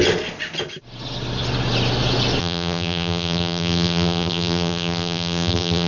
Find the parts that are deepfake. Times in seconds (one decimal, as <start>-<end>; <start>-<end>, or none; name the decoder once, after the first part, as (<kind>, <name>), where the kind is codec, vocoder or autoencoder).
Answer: 2.4-5.9 (vocoder, BigVGAN v2)